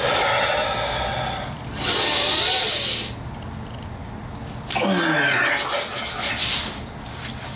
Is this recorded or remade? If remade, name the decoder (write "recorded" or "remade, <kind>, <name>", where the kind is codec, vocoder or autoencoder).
recorded